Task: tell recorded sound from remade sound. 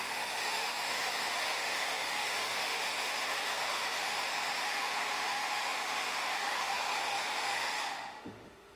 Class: remade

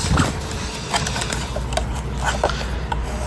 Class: recorded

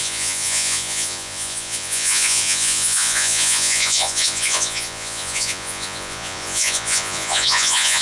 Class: remade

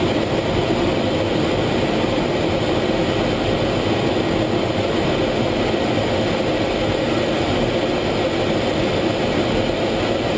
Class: recorded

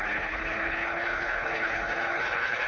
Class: remade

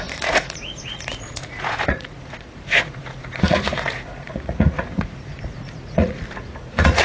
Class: remade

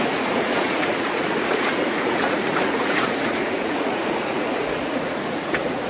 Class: remade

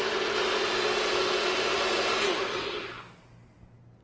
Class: recorded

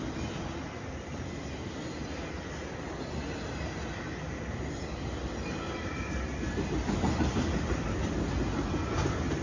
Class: recorded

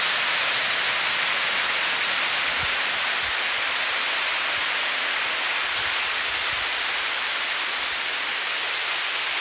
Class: recorded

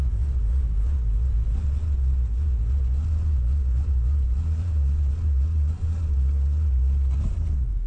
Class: recorded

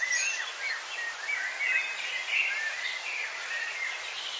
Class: recorded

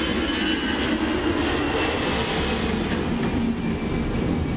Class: recorded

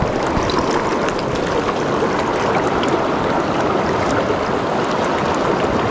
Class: recorded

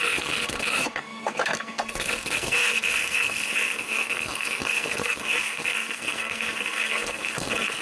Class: remade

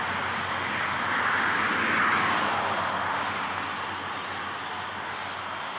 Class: recorded